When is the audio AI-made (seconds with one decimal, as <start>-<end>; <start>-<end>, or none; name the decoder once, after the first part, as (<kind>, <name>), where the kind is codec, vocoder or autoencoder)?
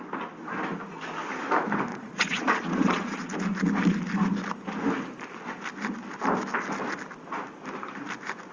1.9-3.3 (vocoder, Vocos)